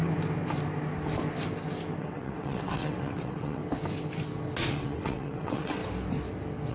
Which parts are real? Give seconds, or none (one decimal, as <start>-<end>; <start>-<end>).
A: 0.0-2.0; 3.6-4.7; 5.8-6.7